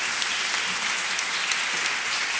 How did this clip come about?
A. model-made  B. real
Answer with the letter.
B